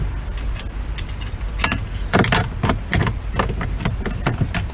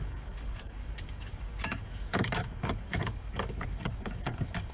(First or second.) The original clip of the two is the first